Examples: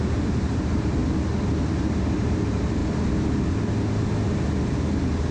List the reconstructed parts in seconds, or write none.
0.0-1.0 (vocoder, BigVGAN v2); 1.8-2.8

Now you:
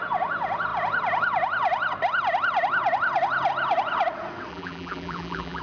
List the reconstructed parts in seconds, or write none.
4.5-5.6 (vocoder, BigVGAN v2)

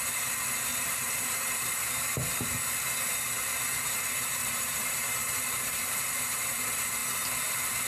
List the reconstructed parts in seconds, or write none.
0.7-1.7 (vocoder, BigVGAN v2); 4.4-5.8